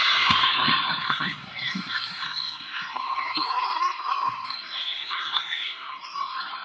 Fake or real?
fake